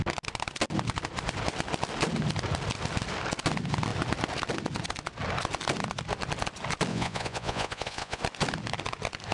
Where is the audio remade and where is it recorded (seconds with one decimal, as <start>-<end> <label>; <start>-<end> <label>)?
0.0-6.9 recorded; 6.9-8.2 remade; 8.2-9.3 recorded